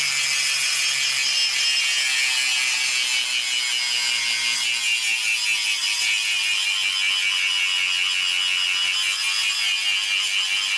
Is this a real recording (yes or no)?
yes